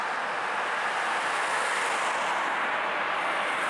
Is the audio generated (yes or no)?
no